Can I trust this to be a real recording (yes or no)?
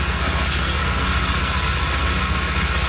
no